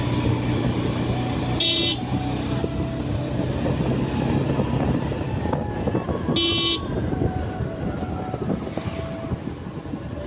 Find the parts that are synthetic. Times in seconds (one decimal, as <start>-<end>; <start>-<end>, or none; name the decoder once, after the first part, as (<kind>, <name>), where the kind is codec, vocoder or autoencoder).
none